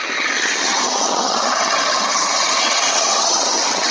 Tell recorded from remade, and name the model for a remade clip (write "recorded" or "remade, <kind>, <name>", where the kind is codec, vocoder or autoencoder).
remade, vocoder, HiFi-GAN